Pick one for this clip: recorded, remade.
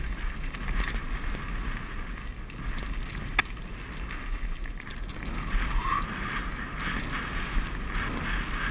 recorded